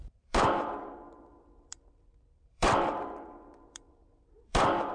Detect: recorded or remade remade